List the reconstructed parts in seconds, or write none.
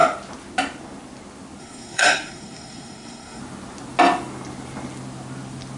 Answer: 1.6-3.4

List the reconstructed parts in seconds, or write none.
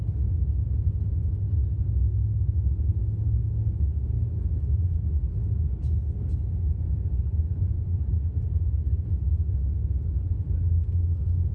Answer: 6.4-9.1